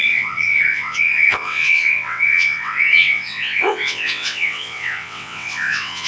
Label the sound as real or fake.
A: fake